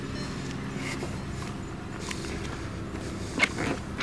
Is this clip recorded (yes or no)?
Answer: yes